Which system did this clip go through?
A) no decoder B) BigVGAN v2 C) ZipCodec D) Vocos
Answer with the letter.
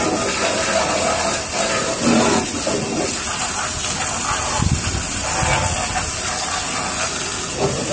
A